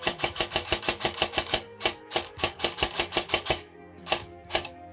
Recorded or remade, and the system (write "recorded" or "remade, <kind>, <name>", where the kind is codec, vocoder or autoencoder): remade, codec, DAC